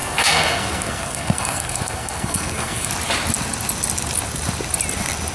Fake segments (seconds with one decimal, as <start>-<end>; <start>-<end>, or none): 0.0-2.9